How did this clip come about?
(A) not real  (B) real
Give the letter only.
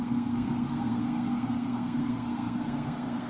A